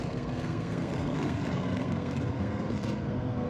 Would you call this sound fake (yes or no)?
yes